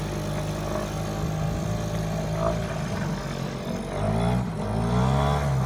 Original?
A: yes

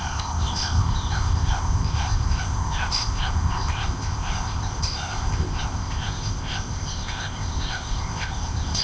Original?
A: no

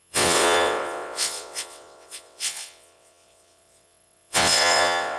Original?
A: no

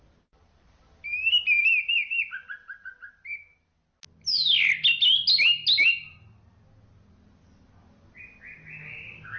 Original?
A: yes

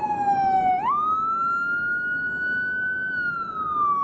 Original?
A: yes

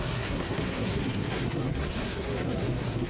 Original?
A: no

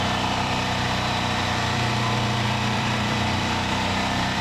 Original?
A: no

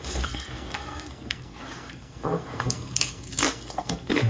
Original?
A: no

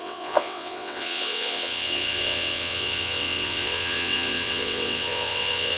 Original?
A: no